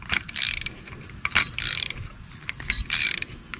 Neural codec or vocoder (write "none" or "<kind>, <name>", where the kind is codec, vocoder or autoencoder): vocoder, BigVGAN v2